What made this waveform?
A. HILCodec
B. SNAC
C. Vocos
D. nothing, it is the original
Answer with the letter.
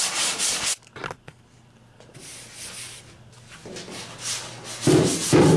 D